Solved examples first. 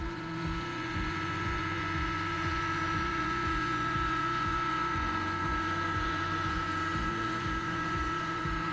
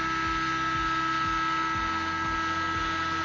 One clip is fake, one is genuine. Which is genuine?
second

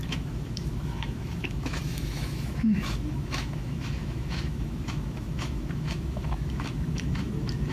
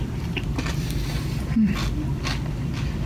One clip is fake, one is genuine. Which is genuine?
second